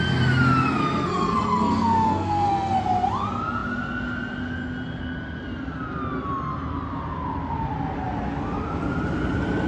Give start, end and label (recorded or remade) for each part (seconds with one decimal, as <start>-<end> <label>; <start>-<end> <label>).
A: 0.0-0.8 recorded; 0.8-2.8 remade; 2.8-9.7 recorded